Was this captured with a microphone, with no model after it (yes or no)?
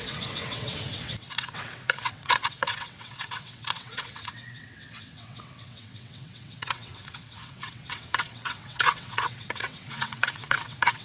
no